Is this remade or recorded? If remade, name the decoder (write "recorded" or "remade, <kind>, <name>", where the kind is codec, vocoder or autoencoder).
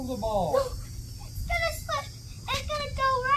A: recorded